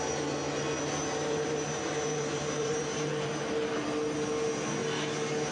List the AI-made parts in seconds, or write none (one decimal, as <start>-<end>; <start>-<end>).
1.0-3.1

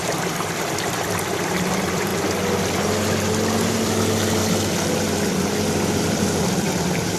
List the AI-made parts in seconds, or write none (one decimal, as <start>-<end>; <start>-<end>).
0.0-2.1; 3.7-4.4; 6.4-7.2

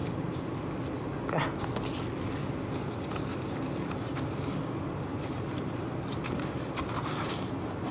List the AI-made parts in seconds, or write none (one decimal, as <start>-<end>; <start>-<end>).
3.1-7.9

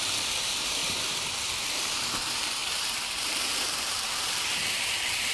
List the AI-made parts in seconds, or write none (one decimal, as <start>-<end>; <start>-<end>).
0.0-5.3

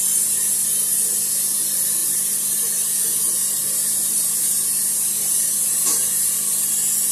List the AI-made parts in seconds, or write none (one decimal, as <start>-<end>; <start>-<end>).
2.0-6.3

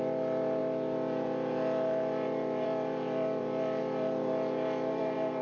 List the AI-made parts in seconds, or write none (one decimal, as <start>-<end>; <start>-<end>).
0.0-5.4